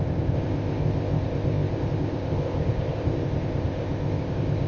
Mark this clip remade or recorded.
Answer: remade